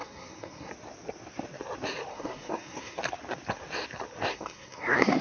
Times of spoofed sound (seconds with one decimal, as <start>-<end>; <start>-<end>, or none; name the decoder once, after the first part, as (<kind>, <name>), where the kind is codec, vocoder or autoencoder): 0.0-0.7 (codec, SNAC); 2.1-3.0; 4.3-5.2